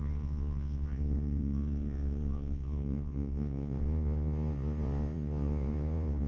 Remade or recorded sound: remade